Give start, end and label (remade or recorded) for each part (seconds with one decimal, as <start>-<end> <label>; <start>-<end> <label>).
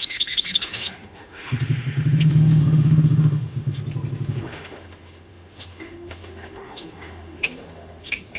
0.0-3.8 remade; 3.8-4.3 recorded; 4.3-8.4 remade